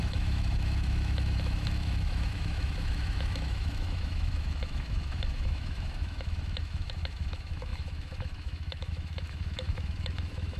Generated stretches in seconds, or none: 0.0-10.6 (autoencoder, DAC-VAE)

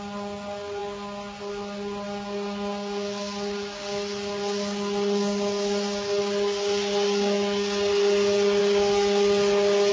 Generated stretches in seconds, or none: none